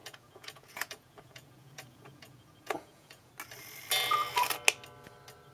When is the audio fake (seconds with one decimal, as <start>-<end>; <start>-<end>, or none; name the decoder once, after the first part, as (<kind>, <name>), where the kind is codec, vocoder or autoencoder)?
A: 0.0-3.3 (vocoder, Vocos)